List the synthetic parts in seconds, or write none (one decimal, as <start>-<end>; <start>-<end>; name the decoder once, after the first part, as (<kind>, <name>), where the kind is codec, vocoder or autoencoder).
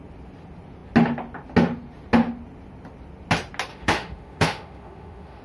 3.7-5.4 (autoencoder, DAC-VAE)